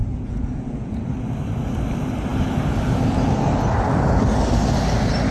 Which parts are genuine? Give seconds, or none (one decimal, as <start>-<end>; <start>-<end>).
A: 1.0-5.3